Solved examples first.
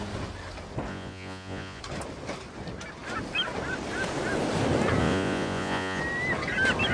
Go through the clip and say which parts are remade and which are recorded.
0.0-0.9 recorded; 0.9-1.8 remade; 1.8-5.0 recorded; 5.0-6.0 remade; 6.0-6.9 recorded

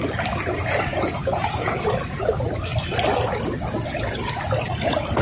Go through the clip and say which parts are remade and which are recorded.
0.0-0.9 recorded; 0.9-1.9 remade; 1.9-5.2 recorded

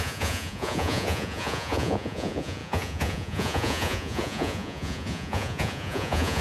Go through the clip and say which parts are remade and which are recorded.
0.0-6.4 remade

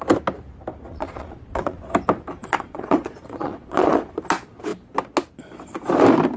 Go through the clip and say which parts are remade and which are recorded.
0.0-0.9 recorded; 0.9-1.8 remade; 1.8-2.4 recorded; 2.4-4.1 remade; 4.1-6.4 recorded